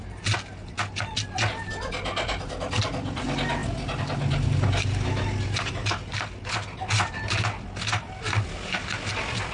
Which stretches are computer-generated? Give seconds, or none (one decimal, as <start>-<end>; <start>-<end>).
none